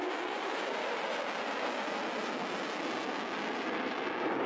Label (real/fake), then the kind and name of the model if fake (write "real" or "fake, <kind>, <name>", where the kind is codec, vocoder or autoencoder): real